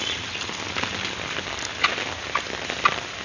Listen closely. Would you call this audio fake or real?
real